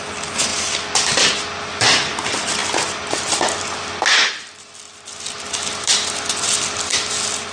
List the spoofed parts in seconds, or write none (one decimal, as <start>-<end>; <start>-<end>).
none